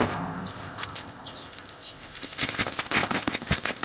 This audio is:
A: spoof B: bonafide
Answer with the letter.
A